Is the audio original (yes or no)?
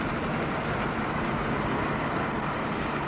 yes